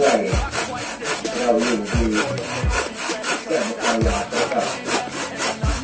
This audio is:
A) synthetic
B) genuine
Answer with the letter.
B